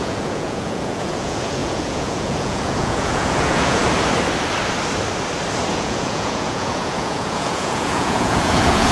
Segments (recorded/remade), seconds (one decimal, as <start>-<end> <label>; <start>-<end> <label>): 0.0-3.8 remade; 3.8-5.7 recorded; 5.7-8.9 remade